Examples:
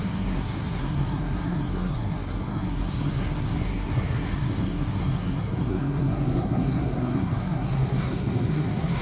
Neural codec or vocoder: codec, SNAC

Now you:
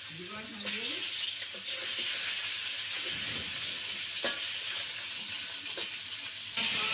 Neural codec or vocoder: none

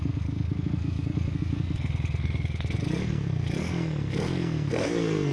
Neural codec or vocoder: codec, SNAC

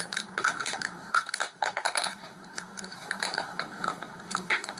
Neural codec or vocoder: codec, SNAC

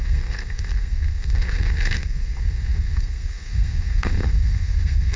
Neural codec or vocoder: codec, SNAC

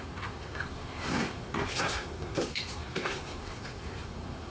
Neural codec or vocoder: codec, SNAC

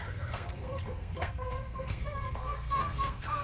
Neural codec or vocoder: codec, SNAC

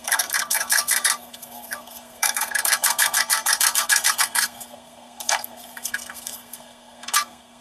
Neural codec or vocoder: codec, SNAC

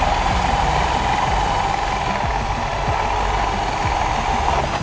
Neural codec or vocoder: none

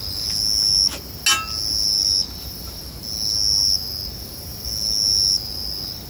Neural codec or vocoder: none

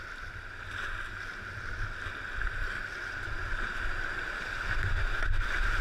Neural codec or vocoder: none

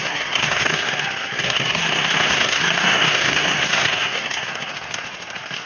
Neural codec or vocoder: codec, SNAC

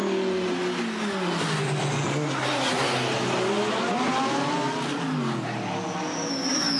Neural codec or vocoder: none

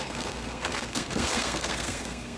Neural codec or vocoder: codec, SNAC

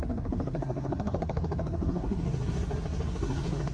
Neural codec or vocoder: codec, SNAC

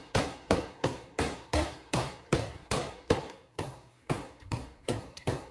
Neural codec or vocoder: codec, SNAC